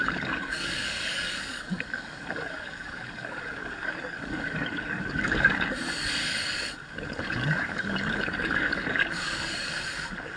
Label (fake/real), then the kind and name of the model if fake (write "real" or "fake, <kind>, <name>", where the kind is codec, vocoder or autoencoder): fake, codec, DAC